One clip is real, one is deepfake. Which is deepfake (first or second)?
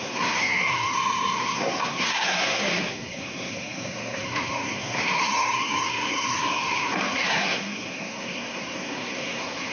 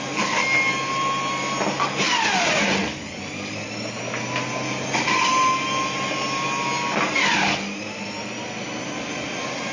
first